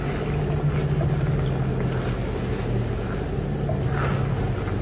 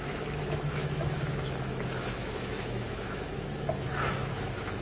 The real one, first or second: first